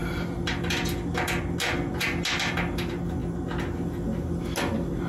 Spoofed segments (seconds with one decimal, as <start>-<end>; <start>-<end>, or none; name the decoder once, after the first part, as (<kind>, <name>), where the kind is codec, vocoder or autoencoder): none